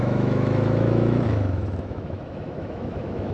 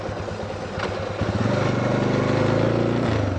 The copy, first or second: first